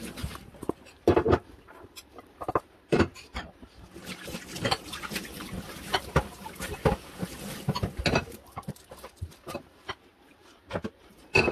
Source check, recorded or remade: remade